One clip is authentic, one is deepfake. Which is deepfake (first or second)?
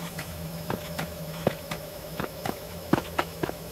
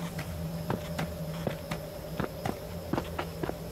first